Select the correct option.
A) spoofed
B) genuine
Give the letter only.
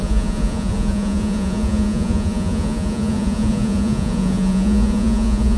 A